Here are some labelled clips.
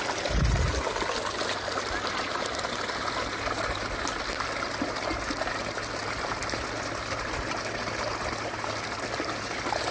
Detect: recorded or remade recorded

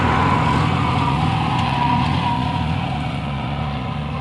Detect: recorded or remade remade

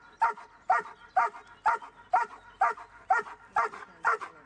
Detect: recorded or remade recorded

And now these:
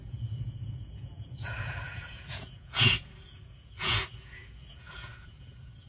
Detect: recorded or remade remade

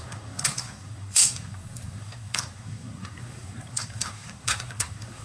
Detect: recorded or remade remade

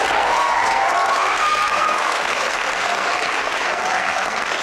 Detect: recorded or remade remade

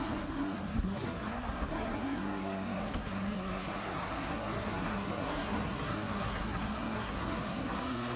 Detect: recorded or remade remade